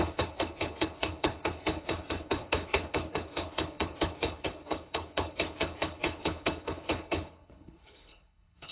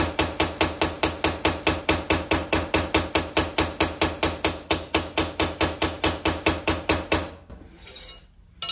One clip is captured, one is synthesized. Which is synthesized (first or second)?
first